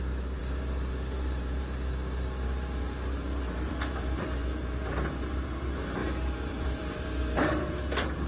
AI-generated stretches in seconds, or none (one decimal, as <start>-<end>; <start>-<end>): 6.0-8.3